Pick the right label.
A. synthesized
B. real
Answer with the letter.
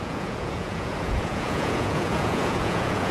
A